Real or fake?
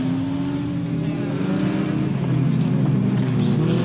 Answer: real